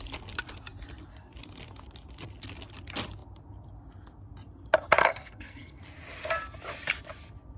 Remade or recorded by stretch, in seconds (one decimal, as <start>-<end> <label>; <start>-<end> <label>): 0.0-5.0 recorded; 5.0-5.8 remade; 5.8-7.6 recorded